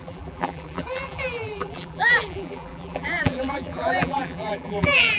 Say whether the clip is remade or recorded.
remade